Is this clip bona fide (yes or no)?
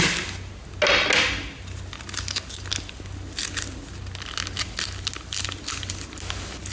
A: yes